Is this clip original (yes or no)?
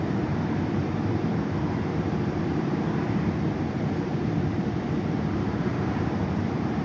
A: no